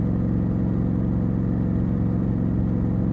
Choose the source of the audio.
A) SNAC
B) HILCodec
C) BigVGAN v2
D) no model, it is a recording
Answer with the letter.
D